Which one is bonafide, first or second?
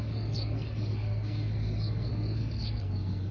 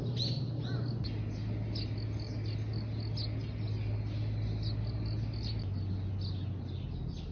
second